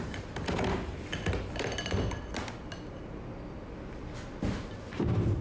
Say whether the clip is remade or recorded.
recorded